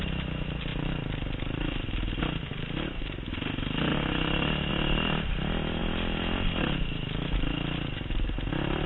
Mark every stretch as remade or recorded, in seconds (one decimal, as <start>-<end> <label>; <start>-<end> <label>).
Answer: 0.0-0.7 recorded; 0.7-2.2 remade; 2.2-8.9 recorded